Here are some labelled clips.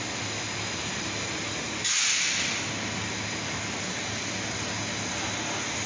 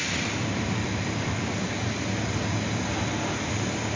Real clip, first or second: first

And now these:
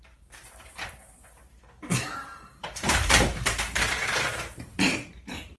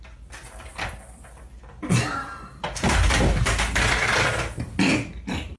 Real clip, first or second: second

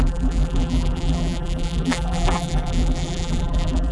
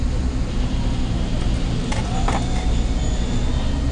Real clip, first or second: second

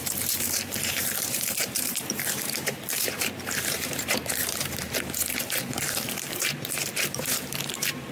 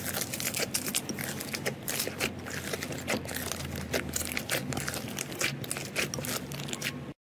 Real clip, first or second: second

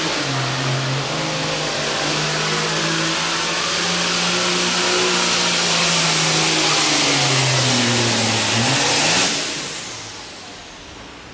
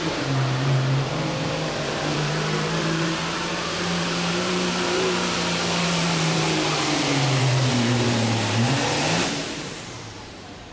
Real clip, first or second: first